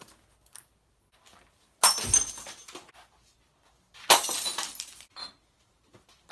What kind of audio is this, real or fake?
real